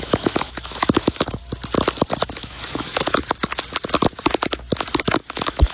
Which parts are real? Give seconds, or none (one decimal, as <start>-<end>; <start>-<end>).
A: 1.4-2.2; 3.2-5.0